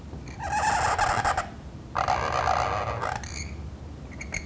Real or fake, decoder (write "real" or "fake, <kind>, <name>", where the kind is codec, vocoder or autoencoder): real